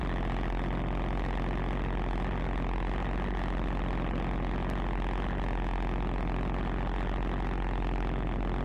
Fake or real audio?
real